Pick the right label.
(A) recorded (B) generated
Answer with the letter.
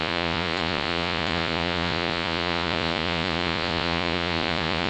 B